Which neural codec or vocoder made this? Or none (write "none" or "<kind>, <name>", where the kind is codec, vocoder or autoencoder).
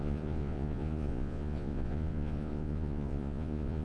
vocoder, Vocos